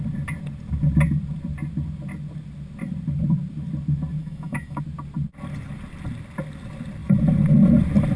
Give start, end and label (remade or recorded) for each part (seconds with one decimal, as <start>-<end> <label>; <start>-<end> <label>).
0.0-4.2 recorded; 4.2-4.8 remade; 4.8-8.2 recorded